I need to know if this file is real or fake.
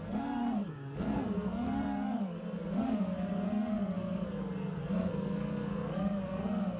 fake